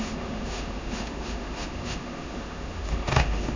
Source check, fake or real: fake